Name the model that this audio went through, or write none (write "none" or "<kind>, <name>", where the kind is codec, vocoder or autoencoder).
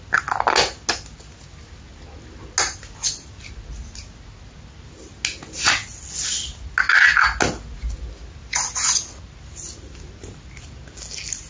none